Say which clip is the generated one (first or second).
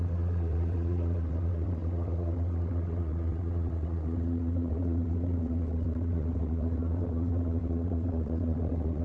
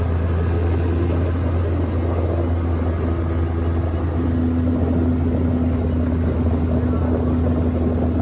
first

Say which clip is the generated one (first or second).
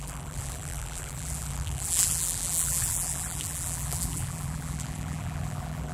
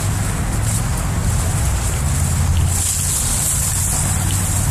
first